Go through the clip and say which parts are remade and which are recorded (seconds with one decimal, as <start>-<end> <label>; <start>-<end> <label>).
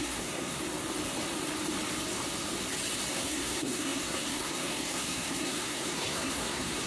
0.0-0.6 remade; 0.6-3.1 recorded; 3.1-6.9 remade